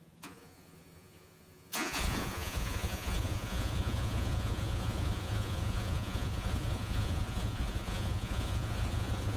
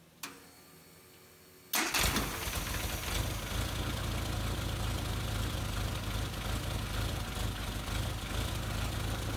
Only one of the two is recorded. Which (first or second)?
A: second